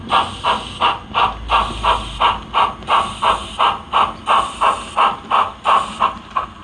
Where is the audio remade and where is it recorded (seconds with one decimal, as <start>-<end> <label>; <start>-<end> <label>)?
0.0-6.6 recorded